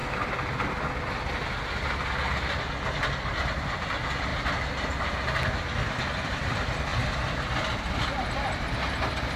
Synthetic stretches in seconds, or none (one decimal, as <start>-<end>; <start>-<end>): none